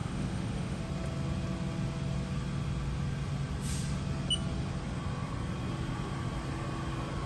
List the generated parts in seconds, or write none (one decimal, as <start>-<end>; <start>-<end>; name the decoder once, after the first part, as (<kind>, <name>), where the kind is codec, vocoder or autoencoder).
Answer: 0.0-0.8 (autoencoder, DAC-VAE)